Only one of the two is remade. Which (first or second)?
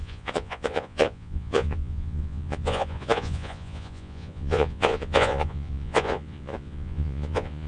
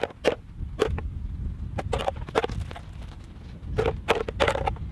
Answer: first